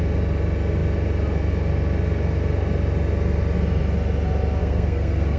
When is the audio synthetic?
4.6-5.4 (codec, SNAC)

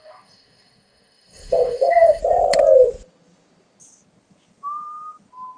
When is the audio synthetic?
0.0-2.2 (codec, DAC)

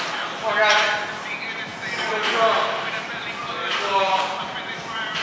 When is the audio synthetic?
3.6-4.2 (codec, DAC)

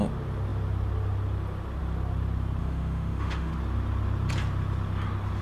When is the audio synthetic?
2.6-3.5 (autoencoder, DAC-VAE)

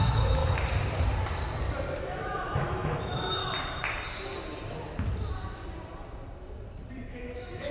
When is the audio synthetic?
0.0-0.4 (autoencoder, DAC-VAE); 2.0-3.4; 7.1-7.7